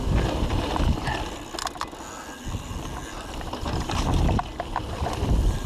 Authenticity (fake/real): real